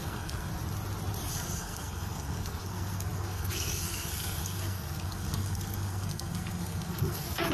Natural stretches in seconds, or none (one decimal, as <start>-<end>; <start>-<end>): 0.5-1.3